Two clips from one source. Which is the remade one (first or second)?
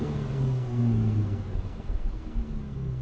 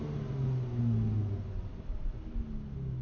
first